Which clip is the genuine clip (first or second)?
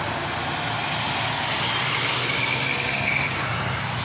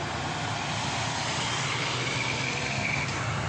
first